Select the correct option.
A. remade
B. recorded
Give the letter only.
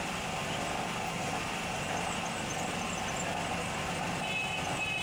B